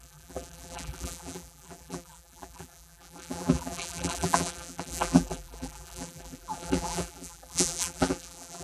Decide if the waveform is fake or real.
fake